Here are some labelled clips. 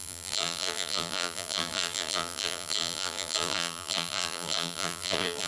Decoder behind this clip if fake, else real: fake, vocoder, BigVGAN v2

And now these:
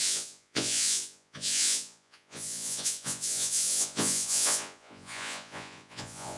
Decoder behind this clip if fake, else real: fake, vocoder, Vocos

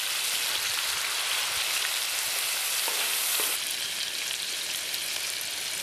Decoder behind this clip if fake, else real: real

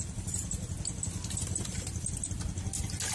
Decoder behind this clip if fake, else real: real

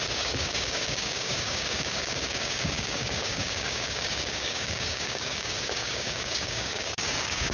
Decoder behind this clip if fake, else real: fake, codec, DAC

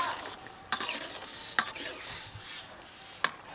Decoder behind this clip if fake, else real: real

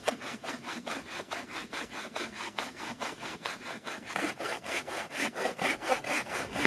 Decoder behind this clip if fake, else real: fake, codec, SNAC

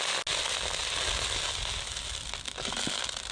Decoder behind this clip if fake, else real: real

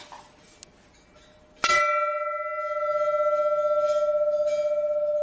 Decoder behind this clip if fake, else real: real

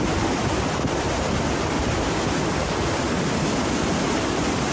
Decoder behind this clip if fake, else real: real